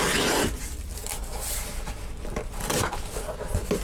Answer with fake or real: real